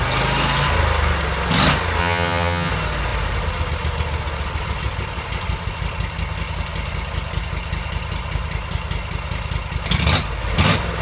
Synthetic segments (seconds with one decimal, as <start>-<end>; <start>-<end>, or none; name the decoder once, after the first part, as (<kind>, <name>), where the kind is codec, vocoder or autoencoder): 2.0-2.7 (vocoder, HiFi-GAN)

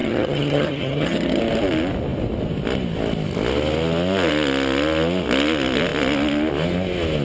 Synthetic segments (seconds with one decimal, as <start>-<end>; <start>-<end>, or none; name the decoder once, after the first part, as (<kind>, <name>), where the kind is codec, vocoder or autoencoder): 0.0-1.4 (vocoder, HiFi-GAN)

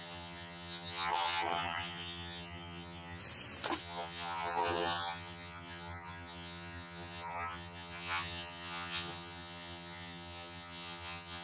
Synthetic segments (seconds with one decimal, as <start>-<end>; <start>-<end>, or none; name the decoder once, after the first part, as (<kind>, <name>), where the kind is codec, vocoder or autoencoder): 0.0-3.2 (vocoder, HiFi-GAN); 3.8-11.4

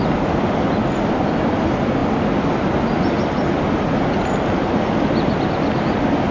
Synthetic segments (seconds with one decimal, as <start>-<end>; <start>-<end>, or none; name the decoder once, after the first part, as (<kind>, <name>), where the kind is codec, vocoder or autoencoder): none

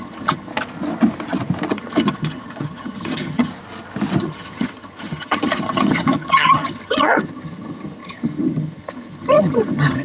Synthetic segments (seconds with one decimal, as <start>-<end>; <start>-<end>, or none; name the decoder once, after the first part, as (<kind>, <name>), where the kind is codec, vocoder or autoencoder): 0.0-0.5 (vocoder, HiFi-GAN); 1.7-3.5; 4.2-10.0